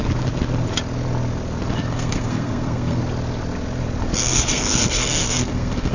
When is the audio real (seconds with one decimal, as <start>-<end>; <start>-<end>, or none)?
0.0-1.9; 3.0-4.2